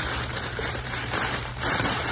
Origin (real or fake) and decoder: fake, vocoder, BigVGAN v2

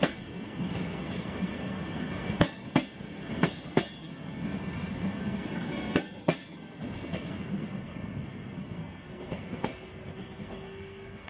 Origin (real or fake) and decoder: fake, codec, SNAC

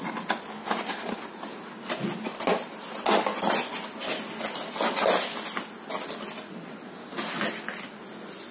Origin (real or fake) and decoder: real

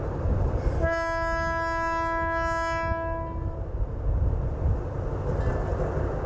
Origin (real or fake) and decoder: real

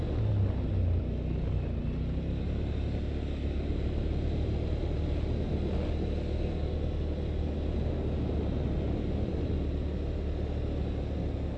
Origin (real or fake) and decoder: real